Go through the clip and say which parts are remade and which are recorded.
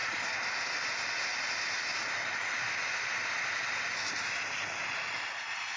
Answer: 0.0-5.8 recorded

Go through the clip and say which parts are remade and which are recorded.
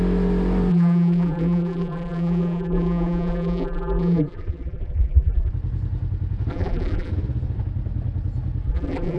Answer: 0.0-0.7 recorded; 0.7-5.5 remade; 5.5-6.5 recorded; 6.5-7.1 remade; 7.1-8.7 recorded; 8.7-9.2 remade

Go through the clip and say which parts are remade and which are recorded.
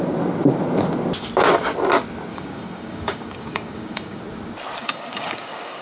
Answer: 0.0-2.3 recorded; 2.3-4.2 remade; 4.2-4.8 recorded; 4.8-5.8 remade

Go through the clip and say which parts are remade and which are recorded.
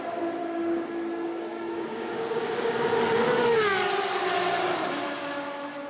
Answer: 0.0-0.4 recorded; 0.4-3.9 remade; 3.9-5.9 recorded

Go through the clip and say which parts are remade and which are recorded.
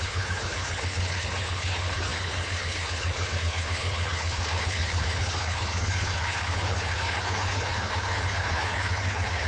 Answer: 0.0-9.5 remade